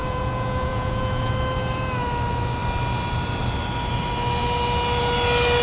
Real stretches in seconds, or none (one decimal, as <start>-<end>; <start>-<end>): 1.3-5.6